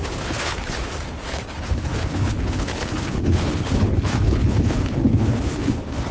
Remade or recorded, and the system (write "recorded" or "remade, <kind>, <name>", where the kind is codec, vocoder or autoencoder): remade, codec, HILCodec